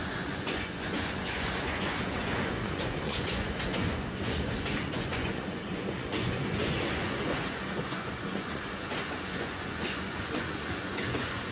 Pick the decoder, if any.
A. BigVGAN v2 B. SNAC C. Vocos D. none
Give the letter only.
C